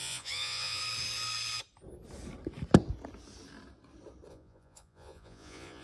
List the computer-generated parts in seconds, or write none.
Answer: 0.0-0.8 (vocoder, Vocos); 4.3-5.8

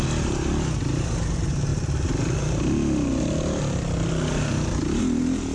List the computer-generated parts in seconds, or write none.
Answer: none

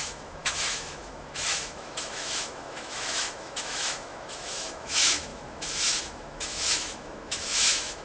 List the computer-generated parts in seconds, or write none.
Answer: 0.0-8.0 (autoencoder, DAC-VAE)

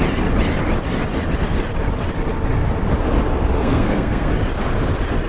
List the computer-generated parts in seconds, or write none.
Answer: 3.6-4.3 (codec, SNAC)

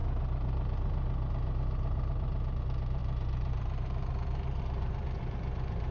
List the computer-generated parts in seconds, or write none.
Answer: 2.6-5.9 (vocoder, BigVGAN v2)

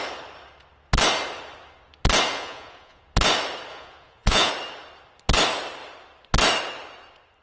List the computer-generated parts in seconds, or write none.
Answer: 2.3-3.0 (vocoder, Vocos); 3.7-4.5

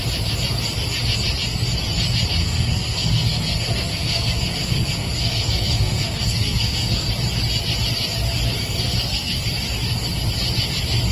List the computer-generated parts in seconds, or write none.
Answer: 2.4-7.1 (codec, SNAC); 8.6-9.4

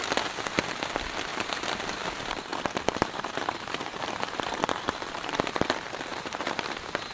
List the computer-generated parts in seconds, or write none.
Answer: 1.3-1.8 (vocoder, BigVGAN v2); 2.5-5.5; 6.1-7.1